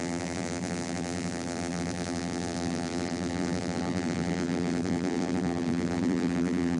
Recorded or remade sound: remade